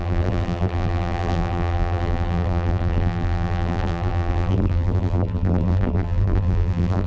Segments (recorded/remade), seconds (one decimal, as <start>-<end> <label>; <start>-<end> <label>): 0.0-7.1 remade